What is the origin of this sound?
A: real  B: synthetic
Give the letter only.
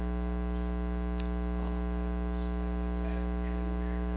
A